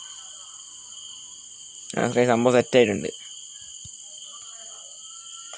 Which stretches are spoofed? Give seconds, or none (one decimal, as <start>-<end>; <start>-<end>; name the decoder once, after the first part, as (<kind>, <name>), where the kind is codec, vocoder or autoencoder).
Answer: none